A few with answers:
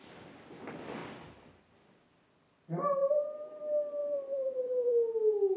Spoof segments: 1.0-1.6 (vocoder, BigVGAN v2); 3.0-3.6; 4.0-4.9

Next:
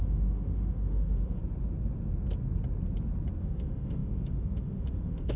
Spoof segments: 0.0-1.4 (autoencoder, DAC-VAE); 3.4-5.4

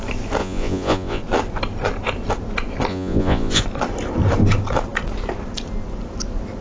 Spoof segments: 0.4-1.2 (vocoder, Vocos); 2.9-3.6

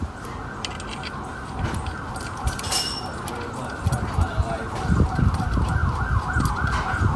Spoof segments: none

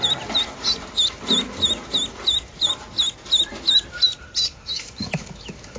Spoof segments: 4.5-5.8 (autoencoder, DAC-VAE)